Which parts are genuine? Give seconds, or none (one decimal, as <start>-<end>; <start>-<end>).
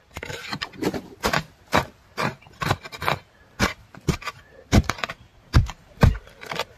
0.4-4.5